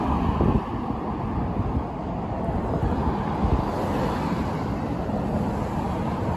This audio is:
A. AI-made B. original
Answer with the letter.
B